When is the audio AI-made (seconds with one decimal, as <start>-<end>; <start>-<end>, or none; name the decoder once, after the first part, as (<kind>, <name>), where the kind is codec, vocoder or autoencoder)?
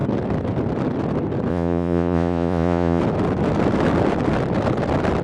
1.5-3.0 (vocoder, Vocos)